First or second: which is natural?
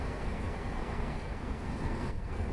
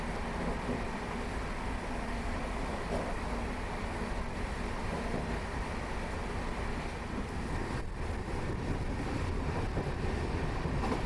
second